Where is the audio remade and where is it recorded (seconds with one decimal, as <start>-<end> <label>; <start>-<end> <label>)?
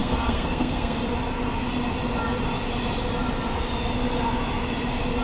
0.0-1.0 remade; 1.0-5.2 recorded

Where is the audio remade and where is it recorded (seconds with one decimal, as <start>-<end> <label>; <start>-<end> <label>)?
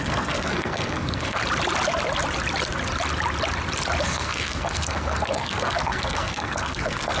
0.0-1.4 remade; 1.4-4.0 recorded; 4.0-7.2 remade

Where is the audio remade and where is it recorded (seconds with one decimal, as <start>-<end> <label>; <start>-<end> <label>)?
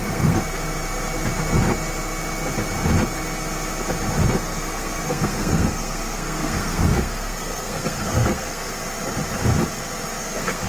0.0-0.4 remade; 0.4-4.3 recorded; 4.3-8.8 remade; 8.8-10.2 recorded; 10.2-10.7 remade